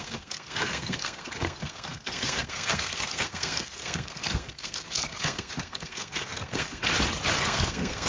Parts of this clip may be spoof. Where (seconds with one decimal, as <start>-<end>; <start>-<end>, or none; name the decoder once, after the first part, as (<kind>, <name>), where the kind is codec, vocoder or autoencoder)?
0.0-6.8 (codec, SNAC); 7.4-8.1